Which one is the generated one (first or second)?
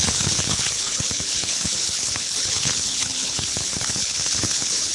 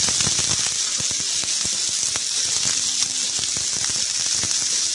first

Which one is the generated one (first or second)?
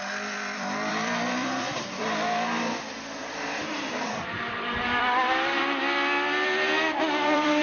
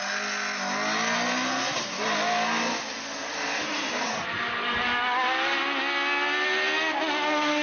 first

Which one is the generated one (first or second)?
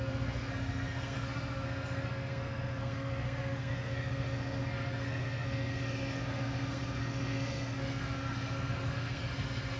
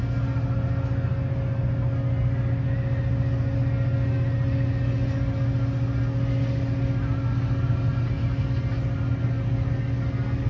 first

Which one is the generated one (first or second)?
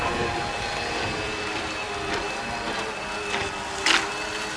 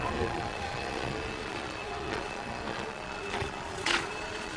second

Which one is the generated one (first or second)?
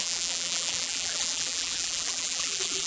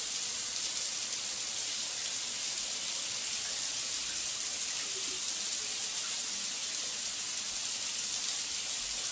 first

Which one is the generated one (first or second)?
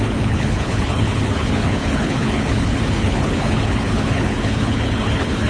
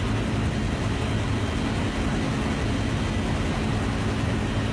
first